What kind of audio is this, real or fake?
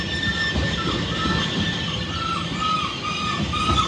real